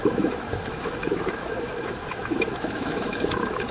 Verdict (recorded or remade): remade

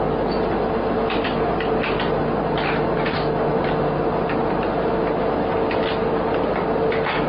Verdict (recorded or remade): recorded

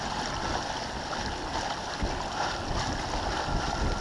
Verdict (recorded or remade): recorded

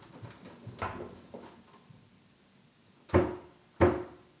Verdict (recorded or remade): recorded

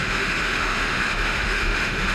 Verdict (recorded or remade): remade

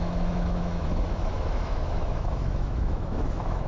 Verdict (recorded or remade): remade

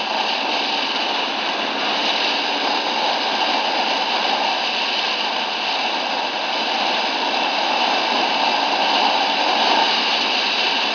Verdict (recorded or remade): recorded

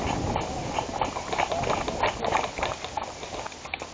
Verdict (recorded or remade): recorded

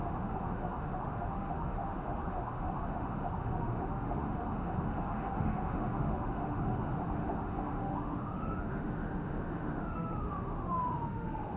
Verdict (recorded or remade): remade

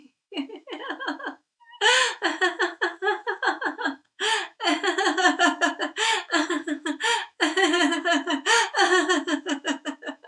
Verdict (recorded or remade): remade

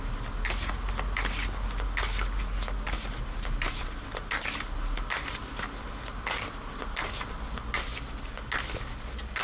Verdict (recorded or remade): recorded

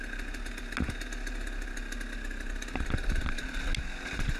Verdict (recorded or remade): recorded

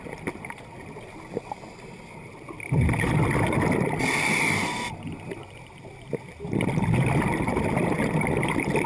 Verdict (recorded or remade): recorded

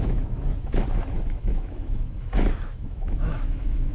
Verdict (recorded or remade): remade